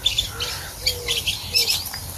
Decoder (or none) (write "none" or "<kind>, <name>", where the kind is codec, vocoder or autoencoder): none